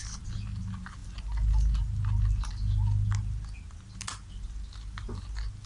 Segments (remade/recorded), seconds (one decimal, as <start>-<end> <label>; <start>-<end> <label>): 0.0-5.7 recorded